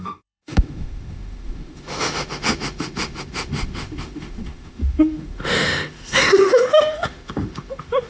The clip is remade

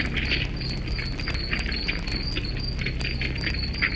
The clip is recorded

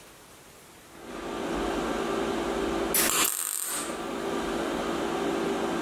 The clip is recorded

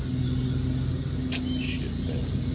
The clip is recorded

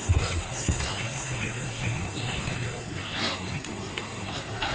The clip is remade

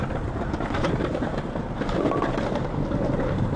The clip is recorded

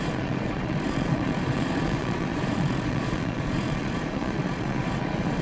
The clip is remade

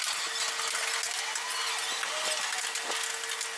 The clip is recorded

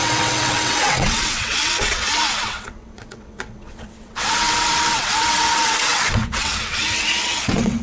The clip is remade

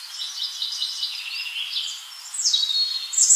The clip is recorded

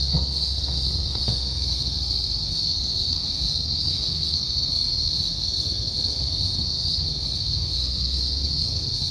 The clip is remade